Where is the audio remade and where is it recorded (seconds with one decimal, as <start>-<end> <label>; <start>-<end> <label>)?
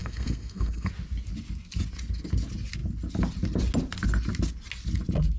0.0-0.9 remade; 0.9-5.4 recorded